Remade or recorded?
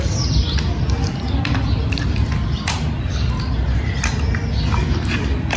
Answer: recorded